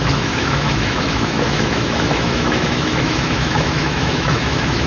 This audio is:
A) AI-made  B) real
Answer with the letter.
A